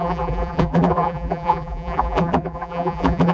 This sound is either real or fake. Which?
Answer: fake